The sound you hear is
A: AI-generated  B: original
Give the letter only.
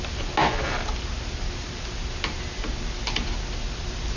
B